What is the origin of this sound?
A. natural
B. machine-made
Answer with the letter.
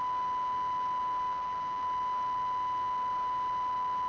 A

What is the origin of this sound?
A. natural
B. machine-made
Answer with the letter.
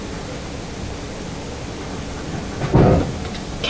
A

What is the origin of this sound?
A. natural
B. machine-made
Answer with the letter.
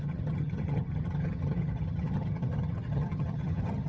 B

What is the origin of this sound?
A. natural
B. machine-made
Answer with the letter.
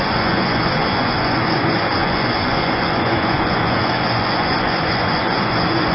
B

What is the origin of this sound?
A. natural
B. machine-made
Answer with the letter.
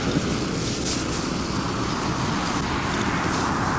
A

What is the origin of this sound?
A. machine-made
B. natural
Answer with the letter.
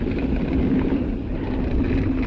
B